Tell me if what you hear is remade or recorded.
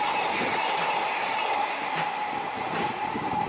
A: recorded